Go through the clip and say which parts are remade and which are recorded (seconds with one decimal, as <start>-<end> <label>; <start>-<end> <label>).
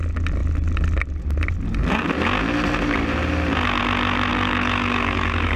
0.0-4.3 recorded; 4.3-5.6 remade